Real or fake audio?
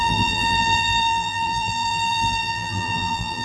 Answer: fake